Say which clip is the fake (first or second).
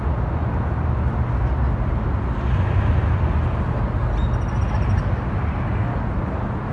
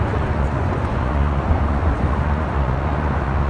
second